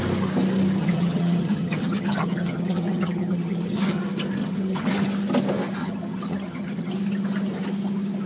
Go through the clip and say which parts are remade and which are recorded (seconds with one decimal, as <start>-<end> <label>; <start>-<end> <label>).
0.0-0.8 recorded; 0.8-4.0 remade; 4.0-4.4 recorded; 4.4-4.9 remade; 4.9-5.8 recorded; 5.8-6.9 remade; 6.9-8.3 recorded